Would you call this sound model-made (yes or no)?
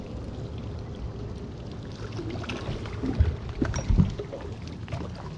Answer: no